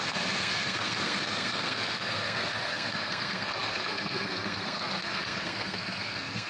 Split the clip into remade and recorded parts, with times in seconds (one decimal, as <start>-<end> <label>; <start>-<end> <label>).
0.0-6.5 remade